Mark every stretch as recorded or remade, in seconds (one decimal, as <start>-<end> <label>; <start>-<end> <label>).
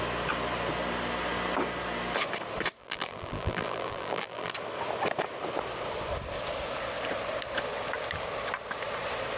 0.0-2.8 recorded; 2.8-4.5 remade; 4.5-9.4 recorded